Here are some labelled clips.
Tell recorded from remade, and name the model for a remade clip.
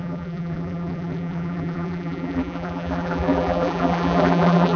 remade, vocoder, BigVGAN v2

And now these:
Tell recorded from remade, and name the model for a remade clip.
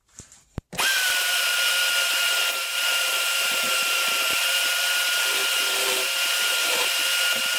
remade, vocoder, BigVGAN v2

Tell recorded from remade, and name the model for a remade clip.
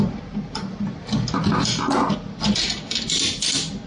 recorded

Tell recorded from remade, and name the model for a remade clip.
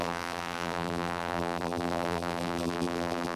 remade, vocoder, BigVGAN v2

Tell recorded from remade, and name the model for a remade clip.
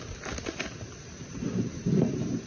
remade, vocoder, BigVGAN v2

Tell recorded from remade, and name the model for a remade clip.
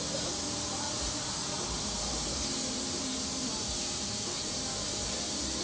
remade, vocoder, BigVGAN v2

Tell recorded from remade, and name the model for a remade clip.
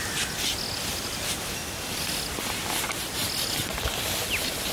recorded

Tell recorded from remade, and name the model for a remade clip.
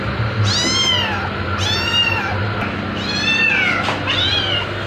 recorded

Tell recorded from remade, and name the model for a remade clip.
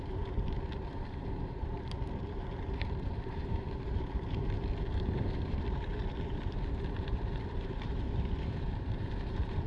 remade, vocoder, BigVGAN v2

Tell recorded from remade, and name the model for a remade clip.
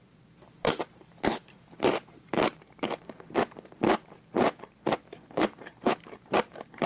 remade, vocoder, BigVGAN v2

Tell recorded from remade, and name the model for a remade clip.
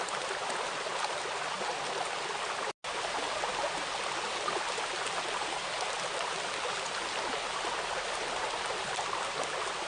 recorded